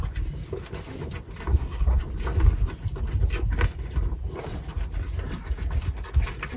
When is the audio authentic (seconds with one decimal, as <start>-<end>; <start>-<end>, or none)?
0.0-1.5; 2.0-6.6